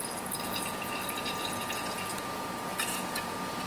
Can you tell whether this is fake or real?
fake